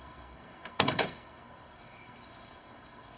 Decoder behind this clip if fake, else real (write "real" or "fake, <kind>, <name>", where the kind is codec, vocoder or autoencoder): fake, codec, SNAC